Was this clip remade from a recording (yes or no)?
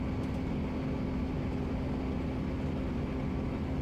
no